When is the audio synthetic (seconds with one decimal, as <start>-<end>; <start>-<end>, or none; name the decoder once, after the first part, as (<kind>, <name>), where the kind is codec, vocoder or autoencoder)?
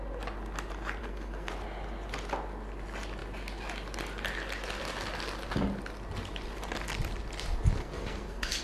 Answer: 1.0-1.5 (codec, SNAC); 7.8-8.6